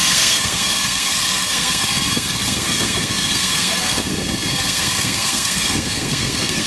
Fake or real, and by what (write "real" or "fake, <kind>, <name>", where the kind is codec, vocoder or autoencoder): fake, codec, SNAC